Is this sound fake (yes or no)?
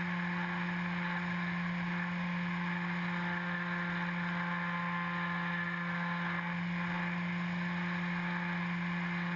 no